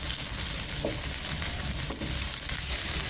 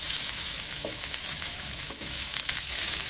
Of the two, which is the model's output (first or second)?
second